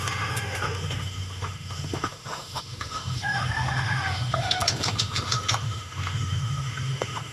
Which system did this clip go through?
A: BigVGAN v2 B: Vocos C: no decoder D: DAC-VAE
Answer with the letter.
D